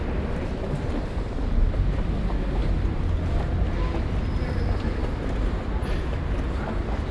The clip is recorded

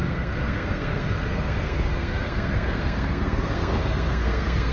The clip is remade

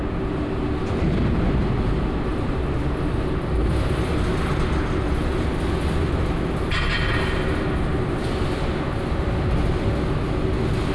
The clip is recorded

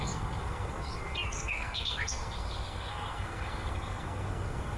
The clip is remade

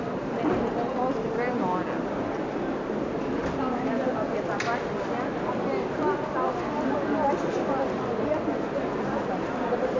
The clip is recorded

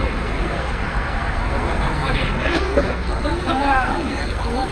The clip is remade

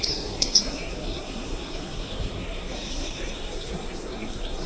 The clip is remade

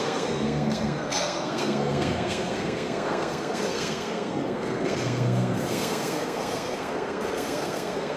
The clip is remade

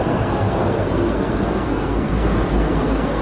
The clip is remade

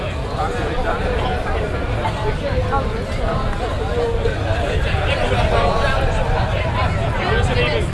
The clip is recorded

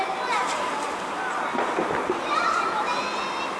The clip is recorded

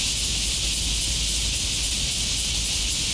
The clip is recorded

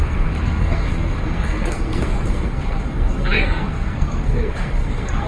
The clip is remade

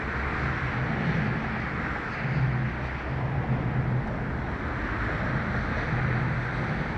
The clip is recorded